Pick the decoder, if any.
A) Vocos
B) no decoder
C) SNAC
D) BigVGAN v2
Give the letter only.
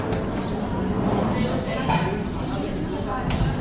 B